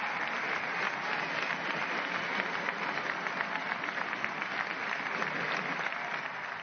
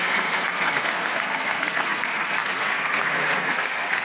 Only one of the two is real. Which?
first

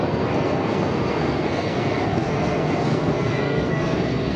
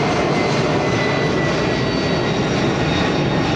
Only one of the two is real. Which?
second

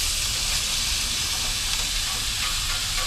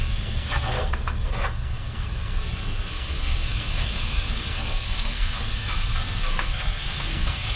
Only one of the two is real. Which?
first